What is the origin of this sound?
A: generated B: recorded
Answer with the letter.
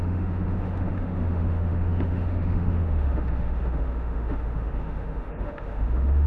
A